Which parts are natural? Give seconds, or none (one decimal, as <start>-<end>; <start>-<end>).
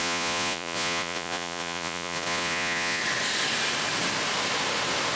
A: 3.0-5.2